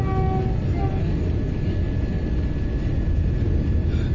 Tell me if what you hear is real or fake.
real